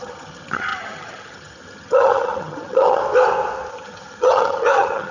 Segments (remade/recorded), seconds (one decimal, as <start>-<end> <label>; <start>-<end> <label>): 0.0-3.0 remade; 3.0-3.7 recorded; 3.7-5.1 remade

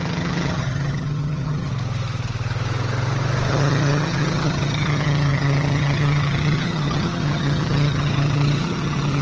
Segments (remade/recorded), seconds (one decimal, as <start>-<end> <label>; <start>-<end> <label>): 0.0-1.7 remade; 1.7-3.5 recorded; 3.5-9.2 remade

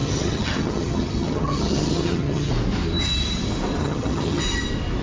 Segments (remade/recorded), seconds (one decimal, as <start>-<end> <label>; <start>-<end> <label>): 0.0-2.5 remade; 2.5-3.8 recorded; 3.8-4.4 remade; 4.4-5.0 recorded

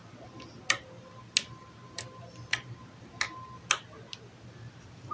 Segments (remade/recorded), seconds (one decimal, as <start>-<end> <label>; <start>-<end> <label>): 0.0-5.1 recorded